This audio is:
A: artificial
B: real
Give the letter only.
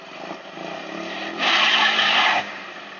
B